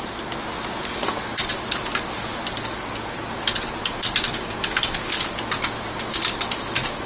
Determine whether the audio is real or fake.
real